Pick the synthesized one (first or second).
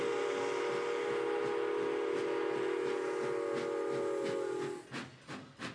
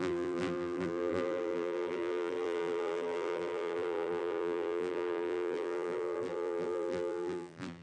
second